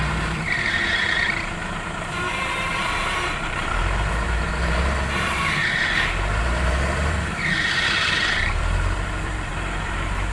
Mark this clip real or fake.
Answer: fake